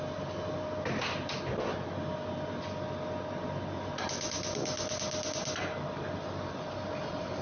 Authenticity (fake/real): real